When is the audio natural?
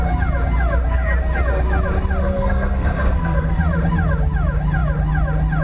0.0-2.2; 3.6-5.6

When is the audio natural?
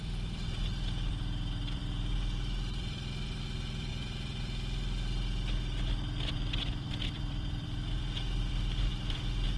8.9-9.6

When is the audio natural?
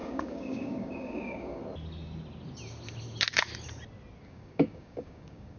1.6-4.2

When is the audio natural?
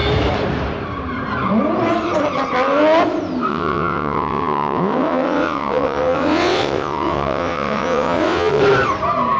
0.0-3.5; 8.6-9.4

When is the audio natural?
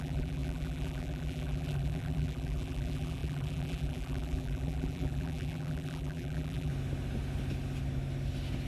6.7-8.7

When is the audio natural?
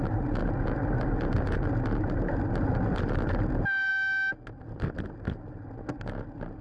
0.0-6.6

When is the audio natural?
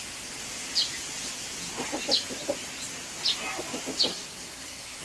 0.0-4.1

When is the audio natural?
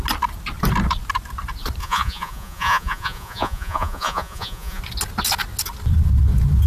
0.0-1.8; 4.8-6.7